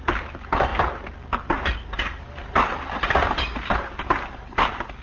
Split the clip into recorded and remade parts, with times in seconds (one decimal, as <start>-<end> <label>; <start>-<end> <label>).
0.0-5.0 recorded